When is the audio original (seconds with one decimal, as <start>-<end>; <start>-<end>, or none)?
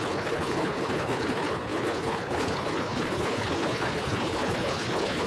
none